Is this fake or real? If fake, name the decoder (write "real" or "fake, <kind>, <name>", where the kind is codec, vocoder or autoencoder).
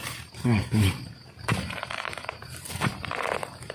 fake, vocoder, BigVGAN v2